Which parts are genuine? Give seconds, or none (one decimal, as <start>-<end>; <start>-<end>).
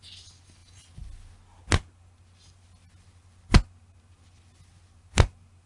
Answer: 0.0-5.7